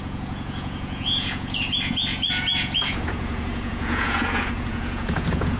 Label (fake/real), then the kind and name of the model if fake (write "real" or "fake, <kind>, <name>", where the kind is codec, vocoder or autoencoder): fake, vocoder, Vocos